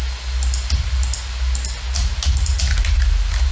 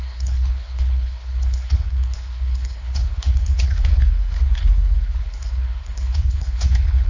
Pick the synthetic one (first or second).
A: second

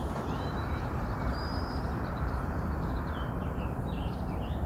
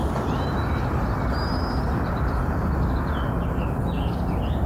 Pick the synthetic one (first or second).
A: first